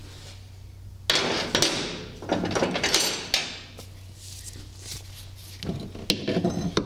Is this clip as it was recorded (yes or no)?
yes